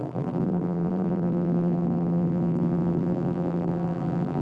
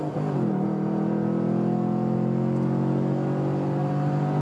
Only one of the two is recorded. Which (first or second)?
second